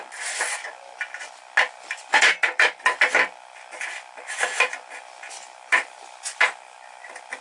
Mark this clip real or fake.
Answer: real